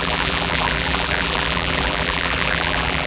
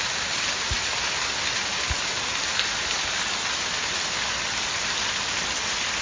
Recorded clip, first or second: second